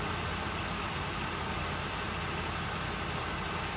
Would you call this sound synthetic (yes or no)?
no